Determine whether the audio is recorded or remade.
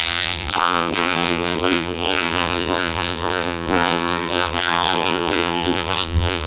remade